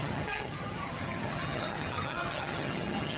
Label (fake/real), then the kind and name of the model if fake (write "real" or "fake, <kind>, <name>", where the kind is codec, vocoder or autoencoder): fake, vocoder, HiFi-GAN